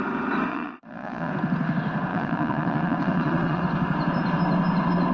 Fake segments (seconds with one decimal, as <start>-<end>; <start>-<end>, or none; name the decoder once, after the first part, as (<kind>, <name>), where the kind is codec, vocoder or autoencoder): 0.5-1.3 (vocoder, Vocos); 2.1-3.6